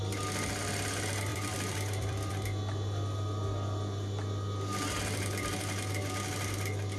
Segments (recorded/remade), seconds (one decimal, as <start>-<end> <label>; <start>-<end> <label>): 0.0-1.3 recorded; 1.3-2.3 remade; 2.3-7.0 recorded